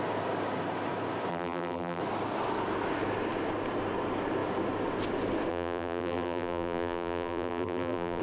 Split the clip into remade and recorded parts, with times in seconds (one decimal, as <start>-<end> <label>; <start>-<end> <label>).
0.0-1.3 recorded; 1.3-2.0 remade; 2.0-5.5 recorded; 5.5-8.2 remade

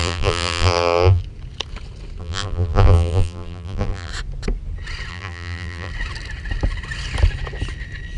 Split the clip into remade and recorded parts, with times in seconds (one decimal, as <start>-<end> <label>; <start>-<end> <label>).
0.0-1.2 remade; 1.2-2.2 recorded; 2.2-4.1 remade; 4.1-5.1 recorded; 5.1-5.9 remade; 5.9-8.2 recorded

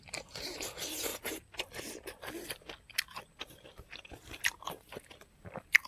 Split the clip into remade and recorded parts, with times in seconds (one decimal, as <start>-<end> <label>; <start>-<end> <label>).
0.0-1.1 remade; 1.1-3.4 recorded; 3.4-5.9 remade

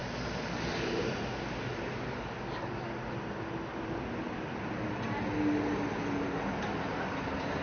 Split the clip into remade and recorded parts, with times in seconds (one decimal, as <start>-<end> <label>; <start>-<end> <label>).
0.0-4.6 remade; 4.6-7.6 recorded

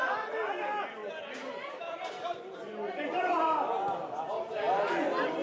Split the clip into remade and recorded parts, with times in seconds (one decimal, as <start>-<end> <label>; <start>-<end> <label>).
0.0-1.0 recorded; 1.0-4.2 remade; 4.2-5.4 recorded